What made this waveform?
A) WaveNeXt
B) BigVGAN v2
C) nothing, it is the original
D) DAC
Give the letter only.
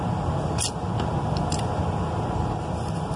C